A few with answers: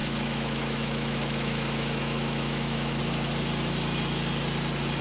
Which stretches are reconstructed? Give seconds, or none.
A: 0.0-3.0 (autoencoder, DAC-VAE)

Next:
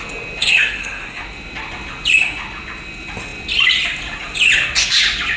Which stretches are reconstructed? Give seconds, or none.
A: 0.4-1.2 (codec, SNAC)

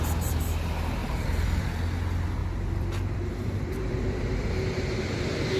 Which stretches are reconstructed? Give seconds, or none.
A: 1.0-1.8 (vocoder, BigVGAN v2); 2.4-4.5

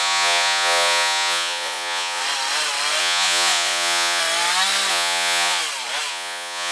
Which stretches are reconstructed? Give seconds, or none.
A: 0.0-2.2 (vocoder, Vocos); 3.0-4.2; 4.9-5.6; 6.1-6.7